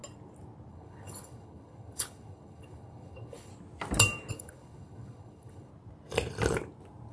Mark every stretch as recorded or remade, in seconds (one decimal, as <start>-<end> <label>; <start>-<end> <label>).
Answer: 0.0-0.7 recorded; 0.7-3.5 remade; 3.5-4.3 recorded; 4.3-5.7 remade; 5.7-7.1 recorded